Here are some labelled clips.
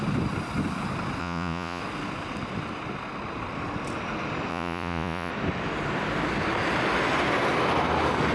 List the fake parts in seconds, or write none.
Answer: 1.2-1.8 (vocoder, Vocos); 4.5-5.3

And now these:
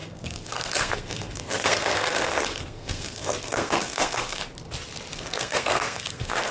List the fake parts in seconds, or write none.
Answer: 0.0-4.4 (codec, SNAC); 5.1-6.5